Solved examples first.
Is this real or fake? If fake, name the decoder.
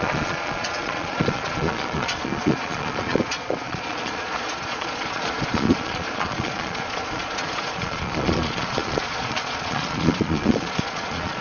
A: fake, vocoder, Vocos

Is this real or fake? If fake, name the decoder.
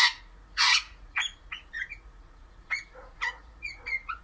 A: fake, vocoder, Vocos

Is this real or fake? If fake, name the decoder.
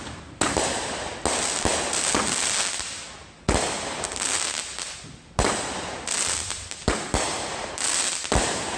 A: real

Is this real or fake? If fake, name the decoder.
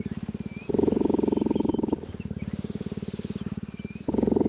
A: real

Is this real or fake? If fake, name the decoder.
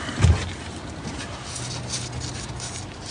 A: real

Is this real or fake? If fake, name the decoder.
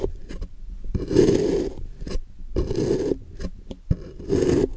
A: real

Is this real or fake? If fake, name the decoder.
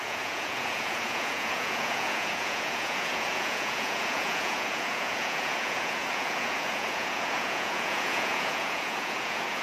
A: fake, vocoder, Vocos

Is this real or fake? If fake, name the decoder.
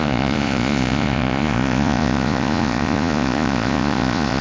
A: fake, vocoder, Vocos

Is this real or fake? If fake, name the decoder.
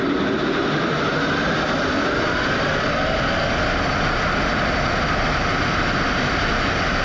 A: real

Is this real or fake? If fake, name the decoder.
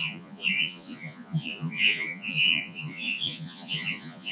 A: fake, vocoder, Vocos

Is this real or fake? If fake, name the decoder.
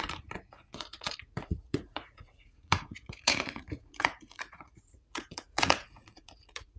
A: fake, vocoder, Vocos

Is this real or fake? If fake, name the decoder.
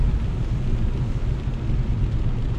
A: real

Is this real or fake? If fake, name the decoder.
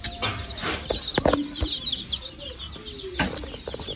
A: real